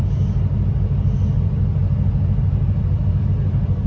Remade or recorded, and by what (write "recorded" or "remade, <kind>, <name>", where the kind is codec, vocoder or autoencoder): recorded